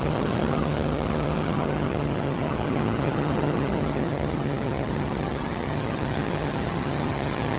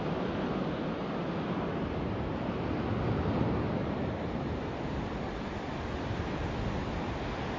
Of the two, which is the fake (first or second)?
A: first